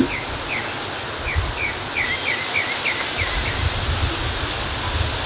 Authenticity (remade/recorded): recorded